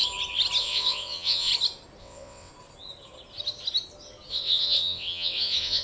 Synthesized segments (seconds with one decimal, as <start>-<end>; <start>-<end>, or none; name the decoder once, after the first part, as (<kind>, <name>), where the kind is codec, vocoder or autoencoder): 0.6-1.5 (vocoder, WaveNeXt); 2.0-2.5; 4.3-5.8